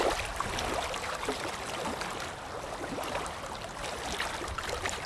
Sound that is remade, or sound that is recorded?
recorded